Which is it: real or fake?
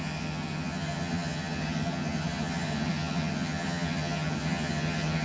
fake